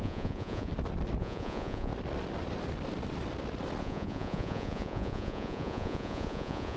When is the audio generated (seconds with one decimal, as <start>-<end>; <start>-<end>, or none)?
0.0-0.7; 1.2-1.9; 3.8-6.8